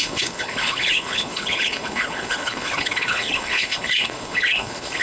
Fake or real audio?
fake